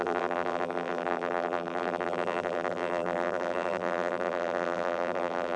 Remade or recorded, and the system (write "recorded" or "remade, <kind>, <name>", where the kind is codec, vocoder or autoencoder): remade, vocoder, BigVGAN v2